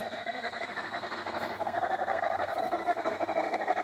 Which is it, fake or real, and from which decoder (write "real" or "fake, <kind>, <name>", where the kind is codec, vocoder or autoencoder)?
fake, codec, SNAC